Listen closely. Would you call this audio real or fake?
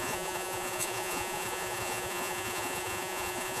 fake